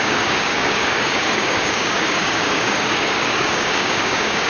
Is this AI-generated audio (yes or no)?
yes